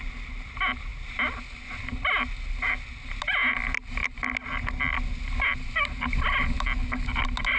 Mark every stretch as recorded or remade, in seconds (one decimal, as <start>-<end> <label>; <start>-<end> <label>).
0.0-7.6 recorded